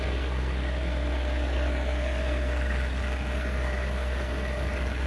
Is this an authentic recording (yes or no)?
no